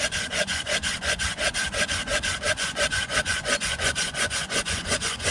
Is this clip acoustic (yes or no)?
no